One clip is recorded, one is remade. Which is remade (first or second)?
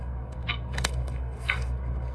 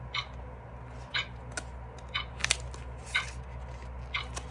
first